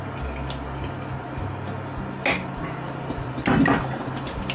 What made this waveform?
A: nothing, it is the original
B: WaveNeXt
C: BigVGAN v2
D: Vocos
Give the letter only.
A